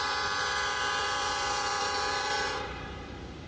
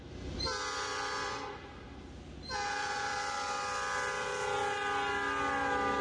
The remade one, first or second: first